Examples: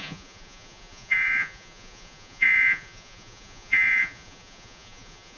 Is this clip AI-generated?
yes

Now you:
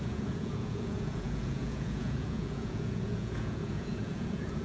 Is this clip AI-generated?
yes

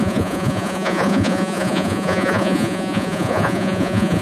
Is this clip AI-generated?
yes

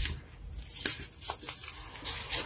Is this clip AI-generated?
no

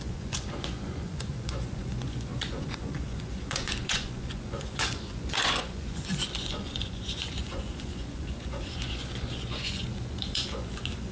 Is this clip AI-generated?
yes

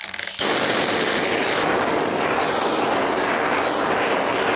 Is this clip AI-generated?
no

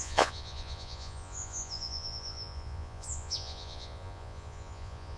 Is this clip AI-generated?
yes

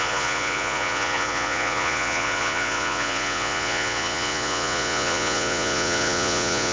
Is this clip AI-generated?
yes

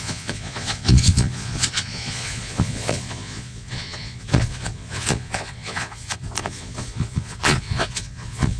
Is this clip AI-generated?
yes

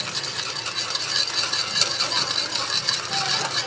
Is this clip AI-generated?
no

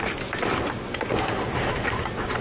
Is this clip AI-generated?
no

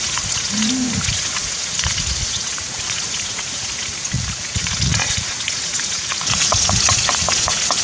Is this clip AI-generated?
yes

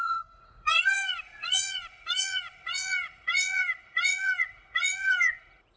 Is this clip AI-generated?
yes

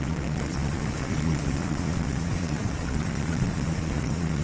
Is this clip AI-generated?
yes